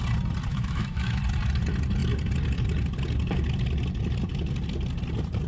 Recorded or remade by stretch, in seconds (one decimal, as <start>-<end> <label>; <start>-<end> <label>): 0.0-0.5 recorded; 0.5-1.2 remade; 1.2-5.5 recorded